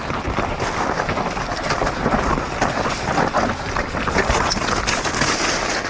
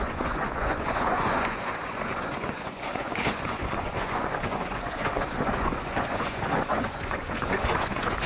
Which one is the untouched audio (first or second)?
first